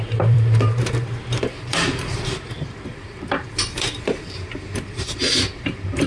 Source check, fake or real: fake